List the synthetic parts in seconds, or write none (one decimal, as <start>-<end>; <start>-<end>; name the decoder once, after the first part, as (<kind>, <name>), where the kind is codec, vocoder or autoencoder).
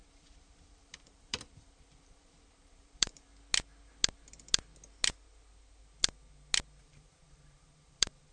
0.0-3.3 (vocoder, BigVGAN v2); 6.8-8.3